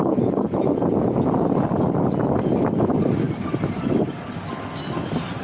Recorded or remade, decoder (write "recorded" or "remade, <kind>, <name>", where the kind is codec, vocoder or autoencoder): recorded